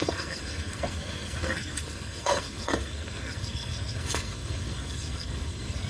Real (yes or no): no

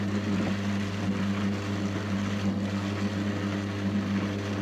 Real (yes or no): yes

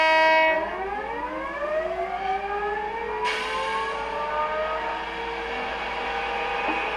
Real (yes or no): yes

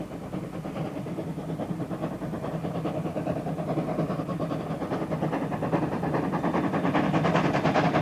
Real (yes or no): yes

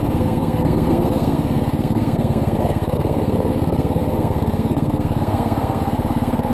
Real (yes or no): no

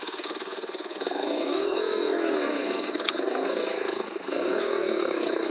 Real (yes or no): no